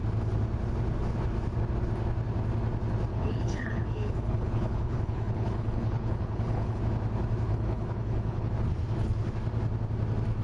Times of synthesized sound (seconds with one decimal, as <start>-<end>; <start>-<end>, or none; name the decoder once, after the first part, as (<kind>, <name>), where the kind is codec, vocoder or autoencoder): 3.1-6.8 (codec, HILCodec); 7.5-8.5